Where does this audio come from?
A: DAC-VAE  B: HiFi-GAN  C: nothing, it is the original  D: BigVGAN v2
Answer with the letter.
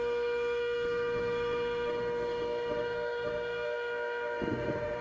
A